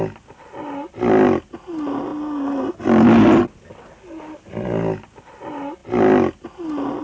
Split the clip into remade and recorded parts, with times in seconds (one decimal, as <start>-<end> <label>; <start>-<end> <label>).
0.0-7.0 recorded